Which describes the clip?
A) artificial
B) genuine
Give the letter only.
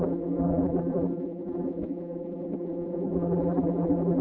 A